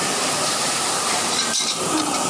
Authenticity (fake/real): fake